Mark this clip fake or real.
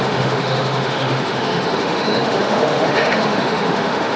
fake